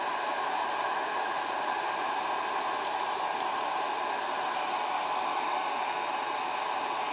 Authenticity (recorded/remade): recorded